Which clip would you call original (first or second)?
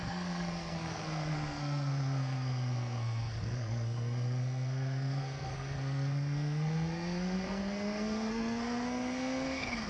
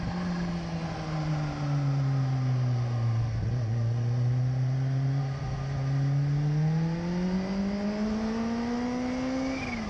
second